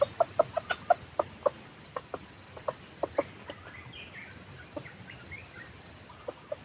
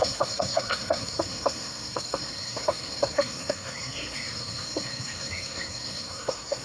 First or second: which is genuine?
first